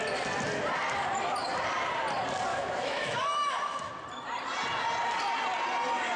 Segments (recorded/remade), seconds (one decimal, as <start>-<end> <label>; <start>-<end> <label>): 0.0-2.5 recorded; 2.5-3.9 remade; 3.9-6.2 recorded